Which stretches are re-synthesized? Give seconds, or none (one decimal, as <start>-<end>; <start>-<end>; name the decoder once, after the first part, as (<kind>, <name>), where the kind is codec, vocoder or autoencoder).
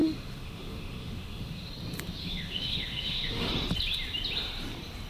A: 0.0-1.7 (autoencoder, DAC-VAE); 2.2-3.5